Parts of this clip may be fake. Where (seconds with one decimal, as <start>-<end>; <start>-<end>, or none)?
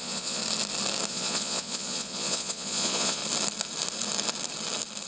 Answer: 0.0-0.4; 1.1-3.2